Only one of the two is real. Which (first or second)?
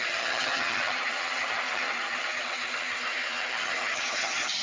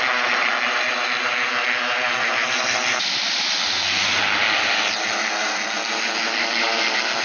second